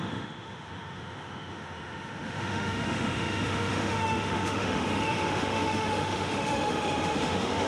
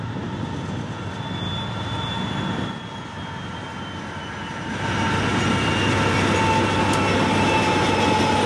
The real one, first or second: second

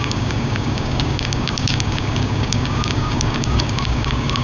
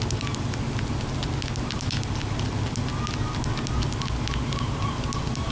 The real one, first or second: second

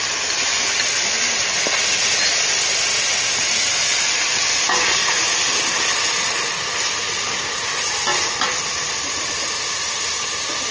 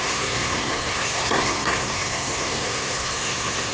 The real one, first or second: first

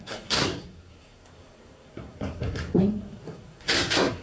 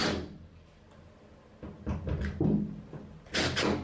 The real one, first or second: second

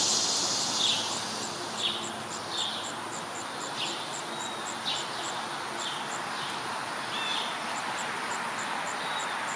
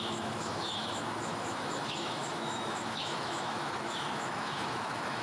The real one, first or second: first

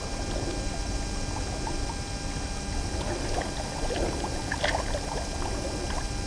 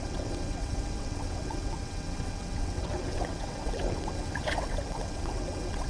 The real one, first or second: first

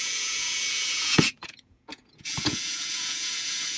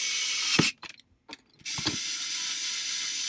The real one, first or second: second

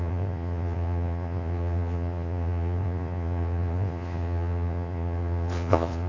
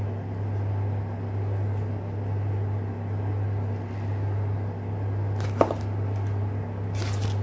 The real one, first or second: second